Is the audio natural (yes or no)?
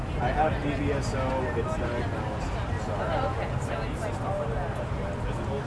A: yes